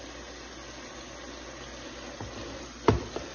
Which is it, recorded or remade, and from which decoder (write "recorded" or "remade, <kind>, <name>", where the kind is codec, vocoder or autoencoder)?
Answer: recorded